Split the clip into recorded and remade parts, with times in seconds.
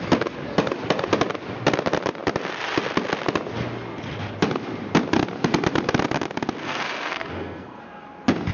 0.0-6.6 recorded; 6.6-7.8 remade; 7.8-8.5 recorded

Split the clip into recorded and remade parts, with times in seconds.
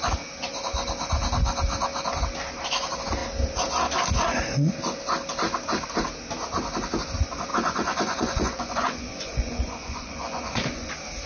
0.0-7.5 recorded; 7.5-10.9 remade; 10.9-11.3 recorded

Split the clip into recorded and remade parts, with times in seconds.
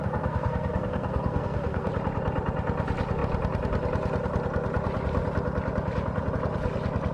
0.0-1.9 remade; 1.9-7.1 recorded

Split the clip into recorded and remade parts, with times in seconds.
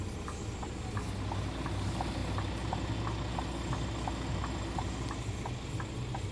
0.0-6.3 recorded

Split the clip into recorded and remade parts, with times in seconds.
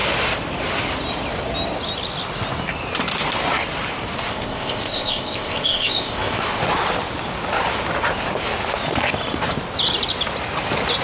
0.0-4.3 recorded; 4.3-6.4 remade; 6.4-11.0 recorded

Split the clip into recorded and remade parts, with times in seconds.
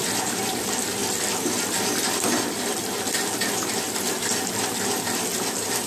0.0-5.9 recorded